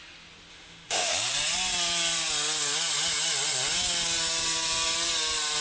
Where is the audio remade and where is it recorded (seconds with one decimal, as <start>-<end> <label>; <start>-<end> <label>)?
0.0-0.5 recorded; 0.5-1.1 remade; 1.1-5.6 recorded